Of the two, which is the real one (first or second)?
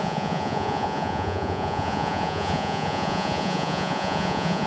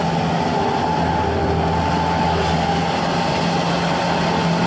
second